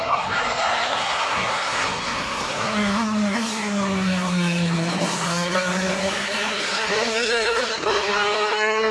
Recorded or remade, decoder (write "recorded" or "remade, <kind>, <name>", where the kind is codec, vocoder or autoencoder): remade, codec, SNAC